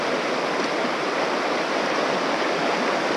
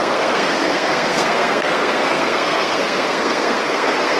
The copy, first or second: second